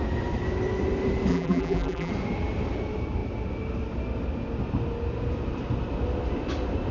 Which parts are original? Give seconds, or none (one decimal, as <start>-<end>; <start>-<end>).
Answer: 0.0-1.3; 2.1-6.9